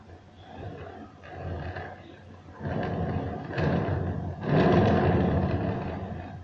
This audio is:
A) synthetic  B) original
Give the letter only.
B